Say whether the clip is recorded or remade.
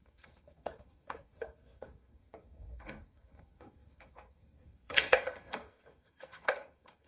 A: remade